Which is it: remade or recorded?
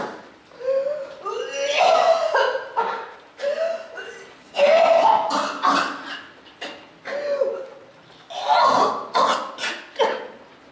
recorded